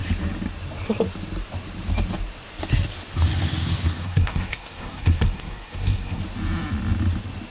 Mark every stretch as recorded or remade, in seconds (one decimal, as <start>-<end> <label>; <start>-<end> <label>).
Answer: 0.0-4.0 recorded; 4.0-6.2 remade; 6.2-7.5 recorded

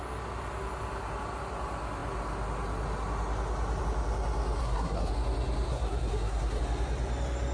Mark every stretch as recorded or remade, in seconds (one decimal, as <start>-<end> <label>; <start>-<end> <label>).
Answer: 0.0-4.6 recorded; 4.6-5.1 remade; 5.1-5.7 recorded; 5.7-6.6 remade; 6.6-7.5 recorded

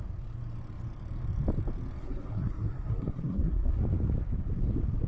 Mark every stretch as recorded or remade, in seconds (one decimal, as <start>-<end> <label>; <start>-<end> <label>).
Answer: 0.0-2.0 recorded; 2.0-3.8 remade; 3.8-5.1 recorded

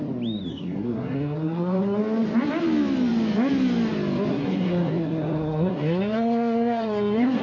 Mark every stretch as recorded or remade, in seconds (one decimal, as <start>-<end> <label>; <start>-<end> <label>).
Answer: 0.0-0.5 recorded; 0.5-2.0 remade; 2.0-4.3 recorded; 4.3-7.4 remade

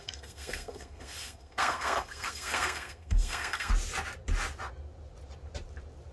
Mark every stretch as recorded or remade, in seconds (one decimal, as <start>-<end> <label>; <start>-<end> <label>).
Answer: 0.0-3.7 remade; 3.7-6.1 recorded

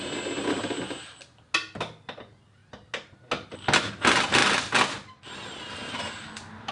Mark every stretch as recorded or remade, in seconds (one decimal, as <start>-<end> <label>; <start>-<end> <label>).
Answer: 0.0-6.7 recorded

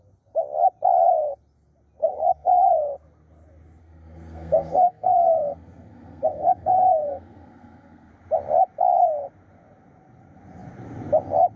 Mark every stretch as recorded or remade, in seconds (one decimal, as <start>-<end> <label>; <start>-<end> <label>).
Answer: 0.0-2.0 recorded; 2.0-2.7 remade; 2.7-3.8 recorded; 3.8-8.1 remade; 8.1-11.6 recorded

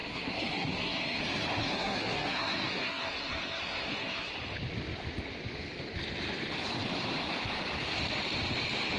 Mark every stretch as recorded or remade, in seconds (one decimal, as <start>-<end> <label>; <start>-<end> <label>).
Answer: 0.0-1.2 remade; 1.2-1.6 recorded; 1.6-4.3 remade; 4.3-9.0 recorded